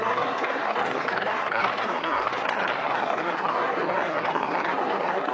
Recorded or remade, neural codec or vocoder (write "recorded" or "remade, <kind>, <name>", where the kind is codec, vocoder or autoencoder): remade, codec, SNAC